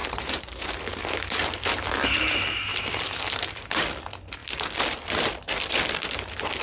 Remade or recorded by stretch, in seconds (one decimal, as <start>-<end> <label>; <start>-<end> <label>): 0.0-0.9 remade; 0.9-2.7 recorded; 2.7-3.8 remade; 3.8-6.6 recorded